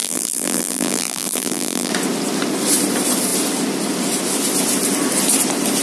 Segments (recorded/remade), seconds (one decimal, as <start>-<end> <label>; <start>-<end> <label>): 0.0-1.9 remade; 1.9-5.8 recorded